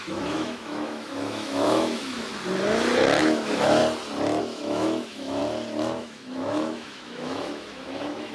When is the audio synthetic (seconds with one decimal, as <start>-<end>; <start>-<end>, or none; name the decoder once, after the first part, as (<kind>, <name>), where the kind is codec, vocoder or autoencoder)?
0.0-2.3 (autoencoder, DAC-VAE); 3.2-3.8; 4.4-5.4; 6.0-8.3